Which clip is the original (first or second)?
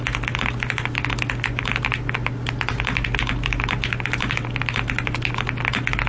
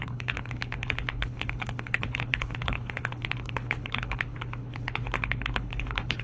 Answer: first